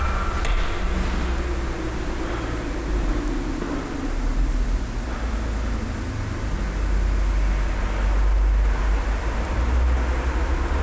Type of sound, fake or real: real